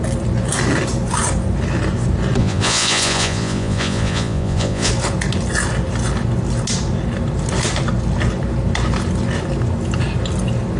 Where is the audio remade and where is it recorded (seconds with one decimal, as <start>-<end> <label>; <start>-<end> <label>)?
0.0-2.4 recorded; 2.4-4.9 remade; 4.9-10.8 recorded